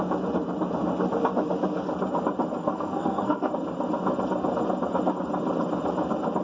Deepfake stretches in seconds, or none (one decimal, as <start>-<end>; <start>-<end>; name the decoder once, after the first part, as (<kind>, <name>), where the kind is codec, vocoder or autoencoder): 2.6-3.5 (codec, SNAC)